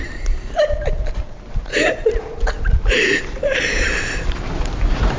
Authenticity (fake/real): fake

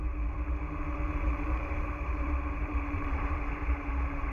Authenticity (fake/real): fake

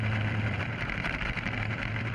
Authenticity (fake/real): fake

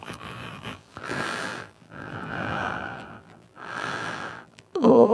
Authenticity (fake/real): fake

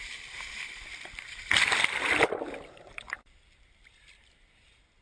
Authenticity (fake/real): real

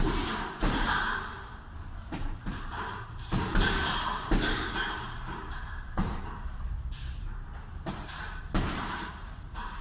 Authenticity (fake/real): fake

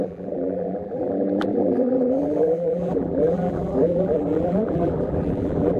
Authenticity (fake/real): fake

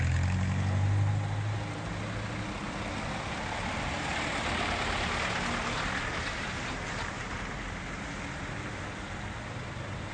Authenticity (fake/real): real